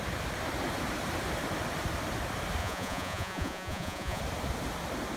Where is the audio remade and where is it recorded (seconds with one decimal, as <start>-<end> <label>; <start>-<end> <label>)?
0.0-2.6 recorded; 2.6-4.2 remade; 4.2-5.2 recorded